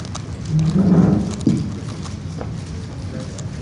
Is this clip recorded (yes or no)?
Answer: yes